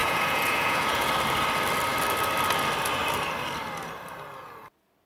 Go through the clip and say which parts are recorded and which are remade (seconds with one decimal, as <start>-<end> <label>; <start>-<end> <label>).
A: 0.0-1.1 remade; 1.1-5.1 recorded